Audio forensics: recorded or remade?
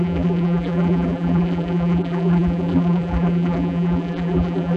remade